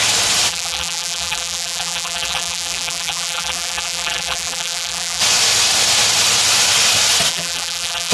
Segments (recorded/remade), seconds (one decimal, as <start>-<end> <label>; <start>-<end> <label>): 0.0-0.5 recorded; 0.5-5.2 remade; 5.2-7.3 recorded; 7.3-8.1 remade